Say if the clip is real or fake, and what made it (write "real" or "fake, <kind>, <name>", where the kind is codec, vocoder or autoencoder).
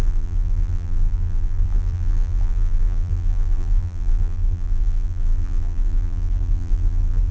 fake, vocoder, BigVGAN v2